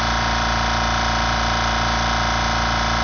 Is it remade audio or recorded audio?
recorded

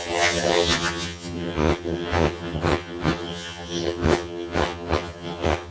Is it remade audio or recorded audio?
remade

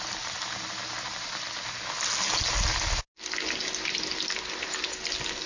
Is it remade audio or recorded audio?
recorded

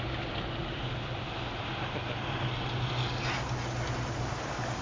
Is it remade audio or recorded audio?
recorded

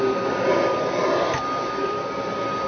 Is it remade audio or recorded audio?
recorded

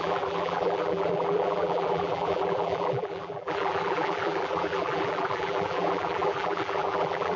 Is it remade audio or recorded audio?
remade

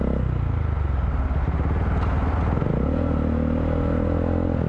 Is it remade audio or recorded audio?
recorded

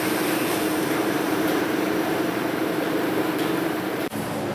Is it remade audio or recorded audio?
remade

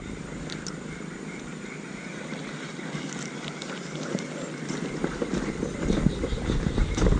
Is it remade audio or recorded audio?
recorded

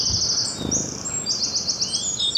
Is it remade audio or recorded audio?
recorded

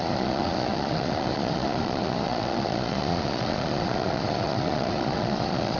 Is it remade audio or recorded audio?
remade